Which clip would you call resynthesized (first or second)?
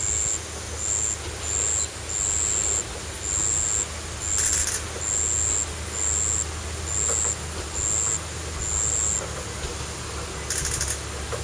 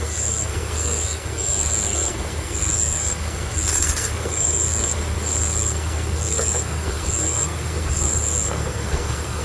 second